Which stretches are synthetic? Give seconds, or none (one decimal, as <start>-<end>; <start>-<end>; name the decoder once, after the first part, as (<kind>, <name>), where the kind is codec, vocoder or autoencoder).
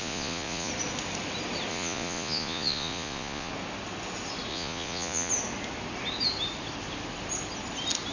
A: 0.0-0.7 (vocoder, Vocos); 1.7-3.5; 4.5-5.3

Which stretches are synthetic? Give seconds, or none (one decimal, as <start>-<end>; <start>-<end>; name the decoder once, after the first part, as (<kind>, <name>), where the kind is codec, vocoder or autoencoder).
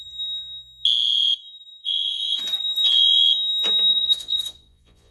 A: 1.8-2.4 (vocoder, Vocos); 3.9-5.1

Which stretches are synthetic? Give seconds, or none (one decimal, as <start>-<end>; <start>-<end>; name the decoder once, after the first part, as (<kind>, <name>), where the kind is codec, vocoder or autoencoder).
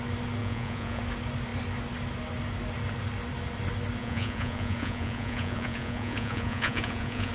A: 0.4-1.0 (vocoder, Vocos); 4.0-7.3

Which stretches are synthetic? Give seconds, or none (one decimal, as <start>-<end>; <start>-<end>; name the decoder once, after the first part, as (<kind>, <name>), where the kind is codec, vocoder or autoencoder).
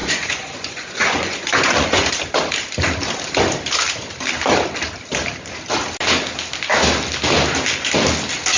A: 0.0-2.1 (vocoder, Vocos)